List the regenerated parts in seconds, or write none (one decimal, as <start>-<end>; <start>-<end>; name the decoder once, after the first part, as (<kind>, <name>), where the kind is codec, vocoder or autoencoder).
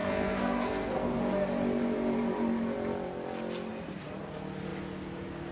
0.0-1.2 (codec, SNAC)